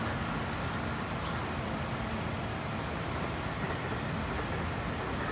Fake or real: real